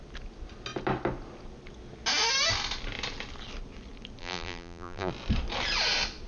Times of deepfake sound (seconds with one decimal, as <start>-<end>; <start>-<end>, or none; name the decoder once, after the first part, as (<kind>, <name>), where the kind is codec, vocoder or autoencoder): 4.2-5.1 (vocoder, BigVGAN v2)